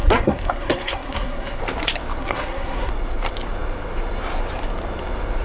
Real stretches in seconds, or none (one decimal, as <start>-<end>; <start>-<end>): 1.6-2.2; 2.9-5.4